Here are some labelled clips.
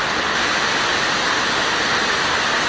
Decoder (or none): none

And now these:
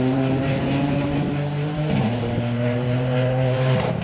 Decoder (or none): vocoder, BigVGAN v2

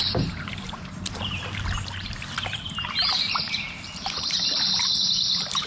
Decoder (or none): vocoder, BigVGAN v2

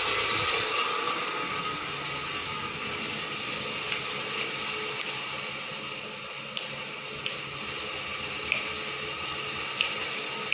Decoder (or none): none